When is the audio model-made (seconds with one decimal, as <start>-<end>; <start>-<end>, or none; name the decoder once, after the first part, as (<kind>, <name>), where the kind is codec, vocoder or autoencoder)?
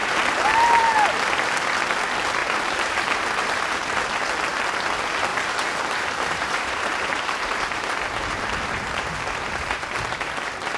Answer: 0.0-0.8 (vocoder, BigVGAN v2); 2.4-3.7; 5.3-10.3